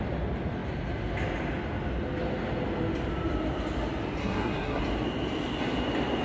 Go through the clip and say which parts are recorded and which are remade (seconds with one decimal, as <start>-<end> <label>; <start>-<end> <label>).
0.0-4.2 recorded; 4.2-4.8 remade; 4.8-6.2 recorded